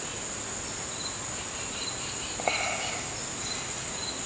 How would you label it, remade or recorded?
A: recorded